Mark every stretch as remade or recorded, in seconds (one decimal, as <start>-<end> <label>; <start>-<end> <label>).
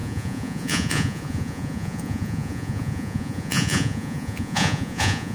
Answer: 0.0-5.3 remade